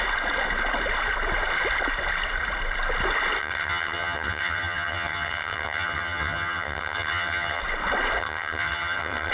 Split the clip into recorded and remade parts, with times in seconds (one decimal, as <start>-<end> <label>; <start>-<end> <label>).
0.0-3.4 recorded; 3.4-7.6 remade; 7.6-8.2 recorded; 8.2-9.3 remade